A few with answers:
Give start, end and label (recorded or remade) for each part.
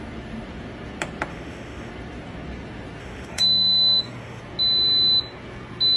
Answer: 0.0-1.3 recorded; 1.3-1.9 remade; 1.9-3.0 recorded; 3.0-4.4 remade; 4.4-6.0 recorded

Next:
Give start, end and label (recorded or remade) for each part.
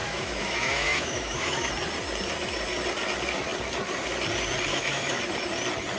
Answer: 0.0-1.7 remade; 1.7-4.7 recorded; 4.7-5.2 remade; 5.2-6.0 recorded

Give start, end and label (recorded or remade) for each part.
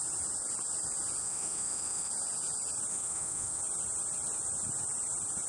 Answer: 0.0-1.2 recorded; 1.2-2.1 remade; 2.1-2.9 recorded; 2.9-3.6 remade; 3.6-5.5 recorded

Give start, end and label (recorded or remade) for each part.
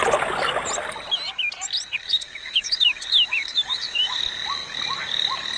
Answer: 0.0-2.0 recorded; 2.0-4.2 remade; 4.2-5.6 recorded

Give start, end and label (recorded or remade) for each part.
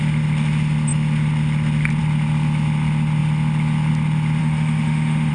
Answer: 0.0-4.4 recorded; 4.4-5.3 remade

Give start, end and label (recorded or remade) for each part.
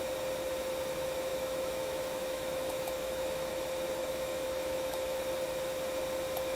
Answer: 0.0-1.3 recorded; 1.3-3.5 remade; 3.5-4.0 recorded; 4.0-5.2 remade; 5.2-6.6 recorded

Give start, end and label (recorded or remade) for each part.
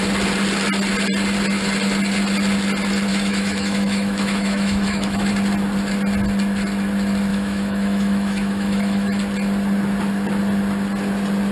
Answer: 0.0-3.1 recorded; 3.1-5.3 remade; 5.3-7.3 recorded; 7.3-9.2 remade; 9.2-11.5 recorded